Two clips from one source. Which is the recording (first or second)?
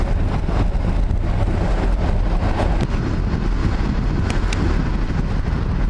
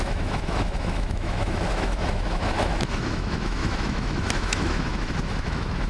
first